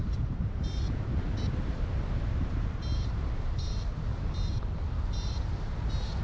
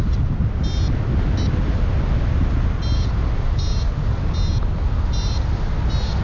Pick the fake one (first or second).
first